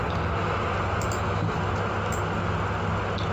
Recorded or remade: recorded